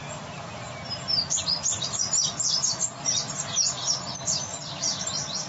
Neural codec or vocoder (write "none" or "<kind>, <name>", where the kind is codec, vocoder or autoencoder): none